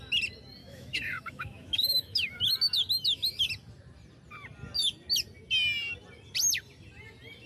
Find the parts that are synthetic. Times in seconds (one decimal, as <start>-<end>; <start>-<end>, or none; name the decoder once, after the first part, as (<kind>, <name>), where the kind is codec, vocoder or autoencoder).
0.6-2.5 (autoencoder, DAC-VAE)